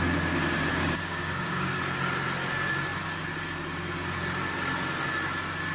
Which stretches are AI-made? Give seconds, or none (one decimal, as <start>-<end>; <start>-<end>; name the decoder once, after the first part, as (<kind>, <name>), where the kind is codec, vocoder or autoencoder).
0.7-1.8 (codec, DAC)